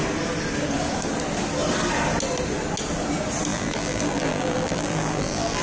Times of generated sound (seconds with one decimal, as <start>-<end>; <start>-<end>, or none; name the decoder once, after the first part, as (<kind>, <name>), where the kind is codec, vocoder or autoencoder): 3.5-5.6 (vocoder, BigVGAN v2)

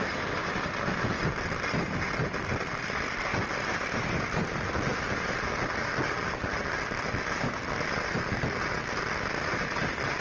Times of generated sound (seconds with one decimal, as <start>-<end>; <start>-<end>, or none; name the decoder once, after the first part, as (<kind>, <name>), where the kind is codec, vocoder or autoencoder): none